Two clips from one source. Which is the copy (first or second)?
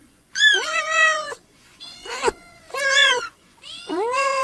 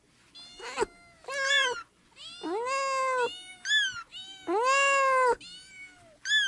first